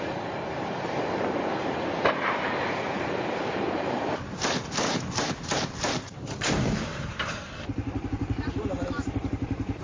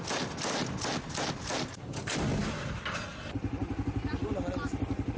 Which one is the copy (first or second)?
first